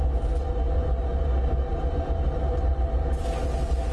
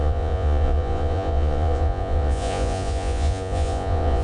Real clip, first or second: first